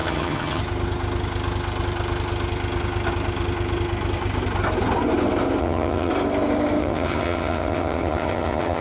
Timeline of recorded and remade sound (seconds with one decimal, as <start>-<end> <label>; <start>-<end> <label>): 0.0-0.6 remade; 0.6-5.6 recorded; 5.6-6.1 remade; 6.1-6.8 recorded; 6.8-8.8 remade